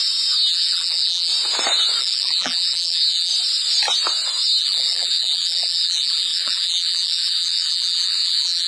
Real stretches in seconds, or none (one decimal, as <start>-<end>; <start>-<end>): 0.0-0.5; 1.3-2.0; 3.3-4.6